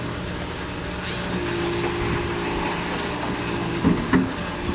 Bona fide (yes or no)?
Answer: yes